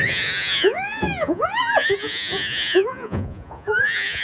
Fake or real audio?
fake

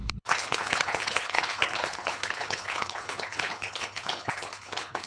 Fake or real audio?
fake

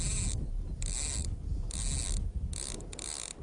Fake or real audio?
real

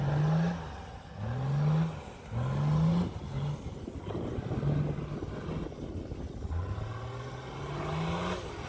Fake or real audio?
real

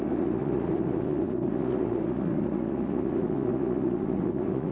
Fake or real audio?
fake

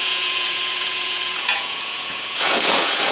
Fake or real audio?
fake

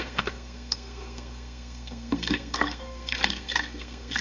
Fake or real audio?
fake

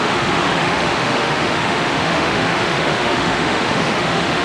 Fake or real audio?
fake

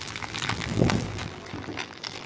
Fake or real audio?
fake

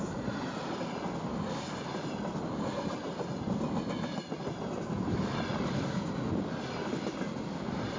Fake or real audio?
real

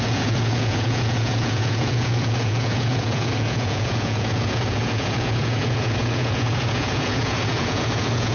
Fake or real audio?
fake